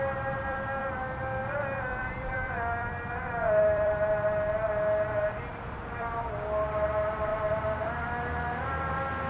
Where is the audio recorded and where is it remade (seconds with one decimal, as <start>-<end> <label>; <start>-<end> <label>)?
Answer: 0.0-9.3 remade